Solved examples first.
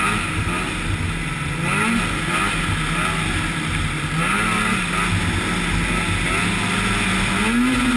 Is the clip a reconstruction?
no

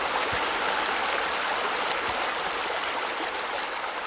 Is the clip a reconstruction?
no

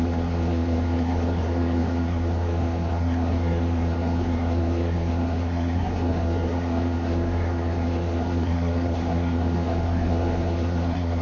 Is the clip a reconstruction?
yes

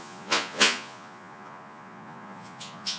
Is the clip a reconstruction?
yes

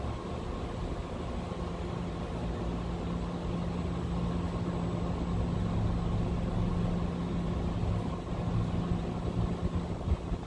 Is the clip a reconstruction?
no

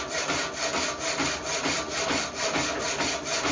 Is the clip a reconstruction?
no